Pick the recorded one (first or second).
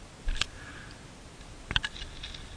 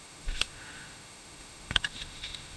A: first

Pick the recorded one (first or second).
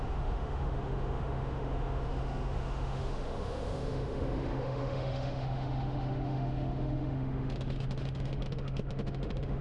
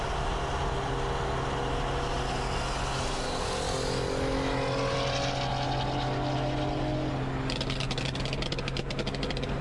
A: second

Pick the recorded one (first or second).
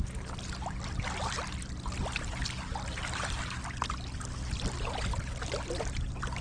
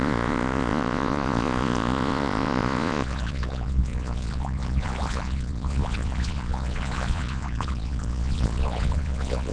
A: first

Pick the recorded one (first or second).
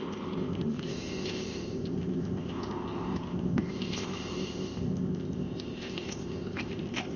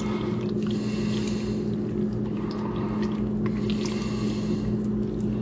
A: second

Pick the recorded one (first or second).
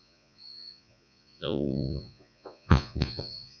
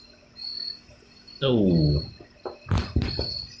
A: second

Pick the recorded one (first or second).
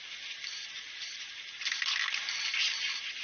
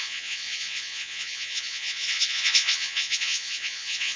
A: first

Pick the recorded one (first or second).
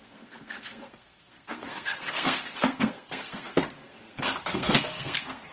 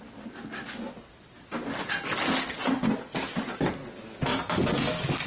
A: second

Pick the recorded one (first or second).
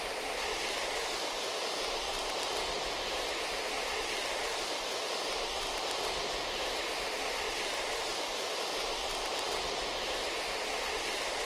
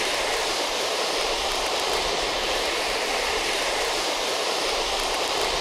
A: first